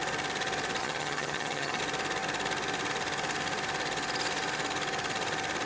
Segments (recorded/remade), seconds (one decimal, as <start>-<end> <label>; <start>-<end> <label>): 0.0-0.8 recorded; 0.8-1.8 remade; 1.8-5.7 recorded